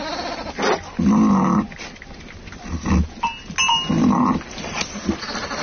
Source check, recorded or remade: recorded